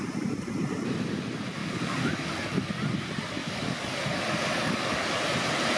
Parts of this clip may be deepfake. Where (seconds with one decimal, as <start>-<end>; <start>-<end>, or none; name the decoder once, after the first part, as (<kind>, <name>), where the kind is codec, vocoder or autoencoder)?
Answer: 1.6-2.7 (codec, DAC); 3.4-4.0; 4.5-5.1